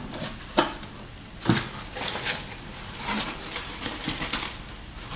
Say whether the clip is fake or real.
real